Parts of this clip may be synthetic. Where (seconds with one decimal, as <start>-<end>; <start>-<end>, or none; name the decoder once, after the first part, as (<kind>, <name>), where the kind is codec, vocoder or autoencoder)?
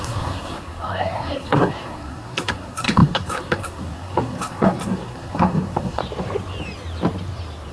0.0-6.0 (codec, SNAC)